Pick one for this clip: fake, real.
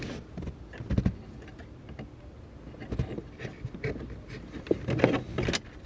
real